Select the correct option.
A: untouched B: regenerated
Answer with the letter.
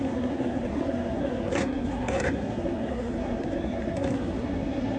B